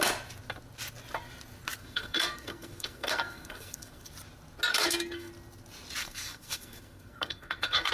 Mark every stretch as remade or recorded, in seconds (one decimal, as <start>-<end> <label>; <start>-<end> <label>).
0.0-1.8 recorded; 1.8-4.1 remade; 4.1-4.7 recorded; 4.7-5.3 remade; 5.3-6.0 recorded; 6.0-7.9 remade